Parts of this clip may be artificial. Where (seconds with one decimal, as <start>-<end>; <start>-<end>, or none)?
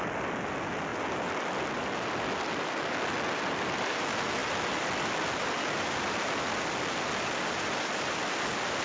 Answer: none